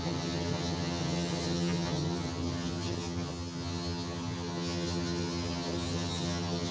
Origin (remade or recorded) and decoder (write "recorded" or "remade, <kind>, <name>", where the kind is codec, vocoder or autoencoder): remade, vocoder, HiFi-GAN